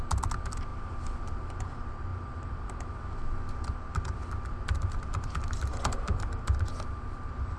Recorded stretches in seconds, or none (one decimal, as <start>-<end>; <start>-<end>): 0.0-0.7; 1.7-2.1; 6.7-7.6